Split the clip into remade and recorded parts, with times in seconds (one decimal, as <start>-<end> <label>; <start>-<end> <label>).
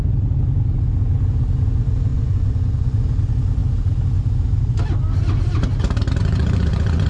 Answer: 0.0-2.1 recorded; 2.1-3.0 remade; 3.0-6.2 recorded; 6.2-7.1 remade